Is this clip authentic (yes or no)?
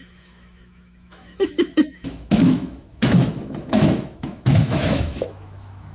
no